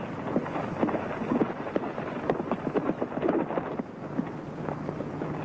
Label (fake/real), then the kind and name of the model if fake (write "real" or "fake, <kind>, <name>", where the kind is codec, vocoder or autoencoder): real